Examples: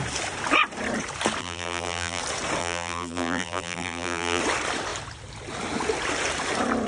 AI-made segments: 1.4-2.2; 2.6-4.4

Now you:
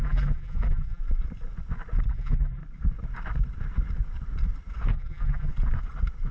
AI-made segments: 0.0-1.0; 2.1-2.6; 4.9-5.5

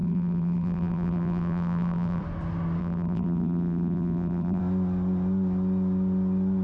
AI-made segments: 0.0-2.2; 2.8-4.6

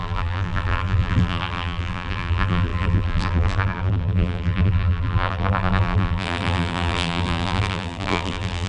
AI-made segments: 0.0-8.7

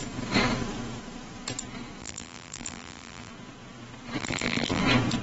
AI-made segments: 2.0-3.3; 4.2-4.8

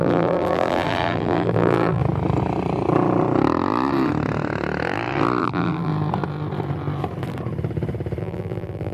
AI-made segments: 0.0-2.0; 5.4-5.9; 8.2-8.9

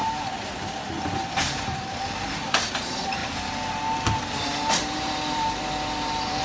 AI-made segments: 1.9-3.2; 4.3-6.4

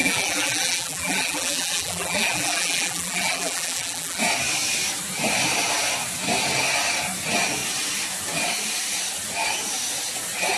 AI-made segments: 0.0-4.2